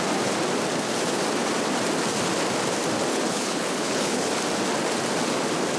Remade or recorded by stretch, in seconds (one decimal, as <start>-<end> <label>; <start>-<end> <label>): 0.0-3.1 recorded; 3.1-4.3 remade; 4.3-5.8 recorded